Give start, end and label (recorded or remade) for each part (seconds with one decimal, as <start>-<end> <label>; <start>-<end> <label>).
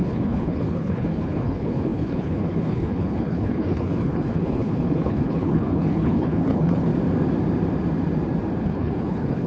0.0-6.9 remade; 6.9-8.6 recorded; 8.6-9.5 remade